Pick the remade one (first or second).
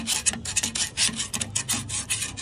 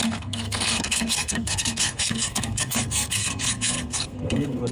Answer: second